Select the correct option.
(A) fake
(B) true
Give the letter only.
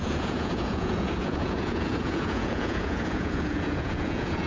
A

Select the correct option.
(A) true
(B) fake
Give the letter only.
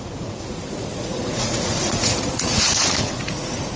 B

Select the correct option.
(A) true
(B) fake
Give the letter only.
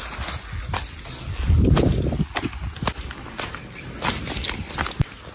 A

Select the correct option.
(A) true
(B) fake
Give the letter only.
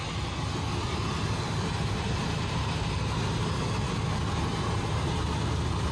A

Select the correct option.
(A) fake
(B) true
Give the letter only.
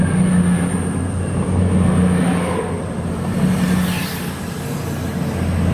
B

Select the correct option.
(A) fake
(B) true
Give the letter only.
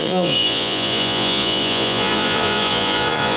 A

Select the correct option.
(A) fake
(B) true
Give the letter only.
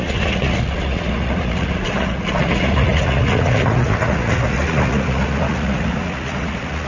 A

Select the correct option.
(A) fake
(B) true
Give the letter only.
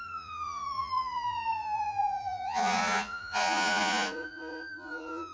A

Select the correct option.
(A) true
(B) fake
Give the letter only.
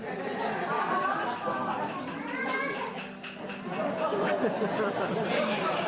A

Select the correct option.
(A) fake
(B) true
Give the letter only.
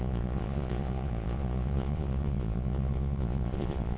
A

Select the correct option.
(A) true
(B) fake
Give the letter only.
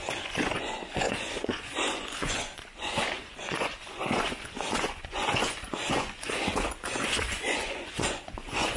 B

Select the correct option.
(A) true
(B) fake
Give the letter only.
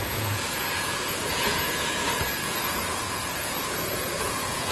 B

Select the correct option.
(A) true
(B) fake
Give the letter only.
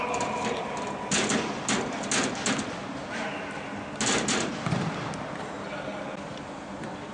A